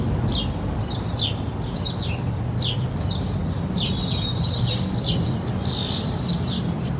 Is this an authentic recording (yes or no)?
yes